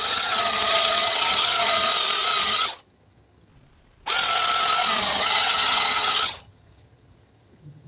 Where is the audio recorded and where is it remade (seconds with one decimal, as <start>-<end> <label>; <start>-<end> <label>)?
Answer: 0.0-1.9 remade; 1.9-2.4 recorded; 2.4-3.5 remade; 3.5-5.0 recorded; 5.0-7.9 remade